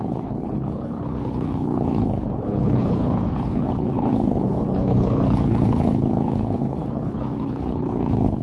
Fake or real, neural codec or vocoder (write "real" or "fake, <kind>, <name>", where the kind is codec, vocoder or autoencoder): fake, codec, HILCodec